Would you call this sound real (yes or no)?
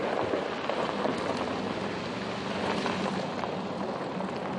yes